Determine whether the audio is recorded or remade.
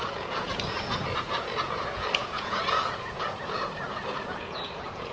remade